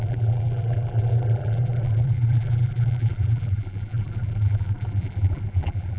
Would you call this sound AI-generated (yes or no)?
yes